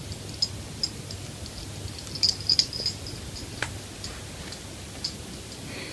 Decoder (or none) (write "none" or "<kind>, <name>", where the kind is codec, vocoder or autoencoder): none